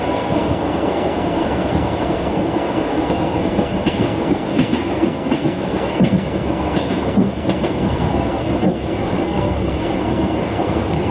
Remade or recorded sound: remade